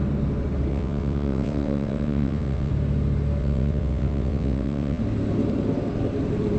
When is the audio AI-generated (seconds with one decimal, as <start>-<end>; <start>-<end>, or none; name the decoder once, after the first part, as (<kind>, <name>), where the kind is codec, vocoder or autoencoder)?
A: 0.7-2.7 (vocoder, WaveNeXt); 3.4-5.0